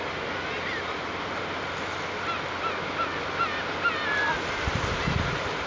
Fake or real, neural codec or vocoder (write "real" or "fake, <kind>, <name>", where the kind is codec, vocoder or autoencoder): real